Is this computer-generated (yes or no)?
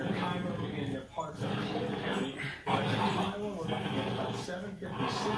no